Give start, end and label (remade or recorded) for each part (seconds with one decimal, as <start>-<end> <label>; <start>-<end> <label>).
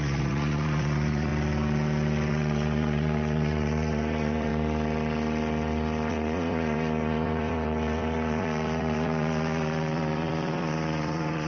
0.0-1.3 remade; 1.3-2.3 recorded; 2.3-4.5 remade; 4.5-6.1 recorded; 6.1-11.5 remade